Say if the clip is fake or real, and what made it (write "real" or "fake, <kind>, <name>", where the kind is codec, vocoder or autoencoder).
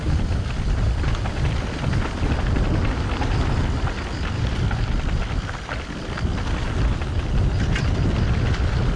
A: real